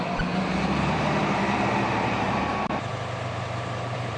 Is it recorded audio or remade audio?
remade